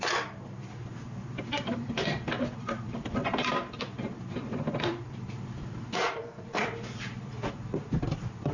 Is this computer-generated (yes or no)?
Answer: yes